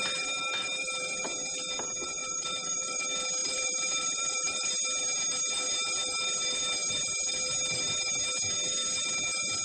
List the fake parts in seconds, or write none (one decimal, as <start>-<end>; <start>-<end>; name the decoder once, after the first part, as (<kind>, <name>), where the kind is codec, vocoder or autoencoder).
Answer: 2.2-3.0 (vocoder, BigVGAN v2); 3.4-4.7